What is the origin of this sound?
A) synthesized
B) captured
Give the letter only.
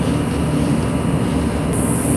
B